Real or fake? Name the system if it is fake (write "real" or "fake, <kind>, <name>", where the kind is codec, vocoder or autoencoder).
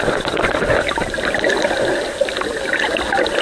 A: real